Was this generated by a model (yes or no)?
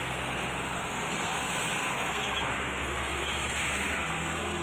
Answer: yes